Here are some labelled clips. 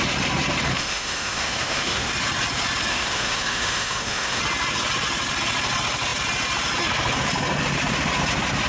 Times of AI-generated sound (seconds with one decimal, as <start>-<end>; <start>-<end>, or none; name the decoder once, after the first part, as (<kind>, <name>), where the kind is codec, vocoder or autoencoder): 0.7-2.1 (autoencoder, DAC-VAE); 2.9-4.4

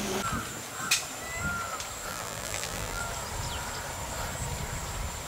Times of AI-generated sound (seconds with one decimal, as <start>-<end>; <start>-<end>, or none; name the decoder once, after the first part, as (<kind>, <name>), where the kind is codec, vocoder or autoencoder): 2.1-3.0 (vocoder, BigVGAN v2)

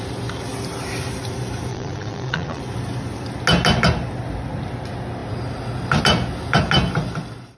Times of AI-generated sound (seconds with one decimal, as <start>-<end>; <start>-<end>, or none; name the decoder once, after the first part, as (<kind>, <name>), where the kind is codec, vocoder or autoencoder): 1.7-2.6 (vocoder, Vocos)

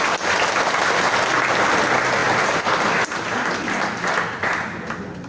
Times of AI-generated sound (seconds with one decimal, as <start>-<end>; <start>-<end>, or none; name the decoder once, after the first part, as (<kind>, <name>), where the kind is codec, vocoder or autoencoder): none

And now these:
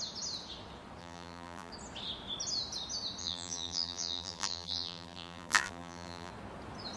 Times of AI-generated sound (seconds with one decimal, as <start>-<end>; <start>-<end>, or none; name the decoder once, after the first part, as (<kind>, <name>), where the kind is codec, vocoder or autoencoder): 1.0-1.7 (vocoder, BigVGAN v2); 3.2-6.3

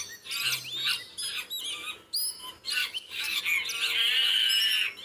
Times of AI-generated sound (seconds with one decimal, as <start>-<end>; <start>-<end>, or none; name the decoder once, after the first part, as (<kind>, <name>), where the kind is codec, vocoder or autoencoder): 2.8-3.4 (codec, DAC)

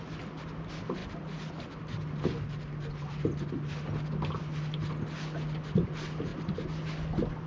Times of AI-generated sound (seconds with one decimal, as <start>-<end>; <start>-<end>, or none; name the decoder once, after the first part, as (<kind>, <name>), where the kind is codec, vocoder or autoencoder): none

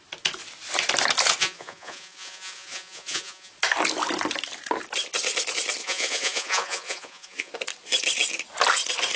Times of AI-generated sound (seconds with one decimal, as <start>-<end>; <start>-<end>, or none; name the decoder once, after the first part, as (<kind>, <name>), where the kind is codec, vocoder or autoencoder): 1.4-3.5 (vocoder, Vocos); 5.8-7.5